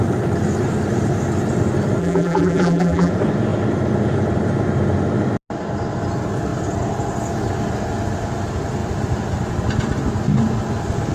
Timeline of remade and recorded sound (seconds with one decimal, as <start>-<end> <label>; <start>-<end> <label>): 0.0-2.0 recorded; 2.0-3.1 remade; 3.1-11.1 recorded